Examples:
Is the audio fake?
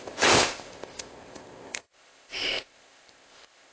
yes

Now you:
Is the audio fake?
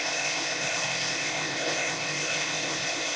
yes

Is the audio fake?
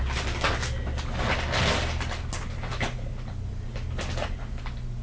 no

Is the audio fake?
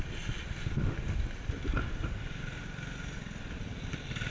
no